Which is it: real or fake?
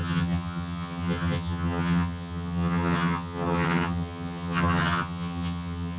fake